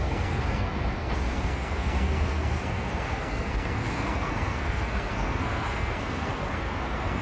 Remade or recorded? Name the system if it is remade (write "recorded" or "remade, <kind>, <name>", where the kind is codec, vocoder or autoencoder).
remade, codec, SNAC